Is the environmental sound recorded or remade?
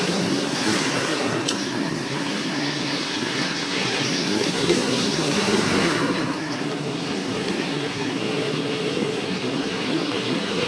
remade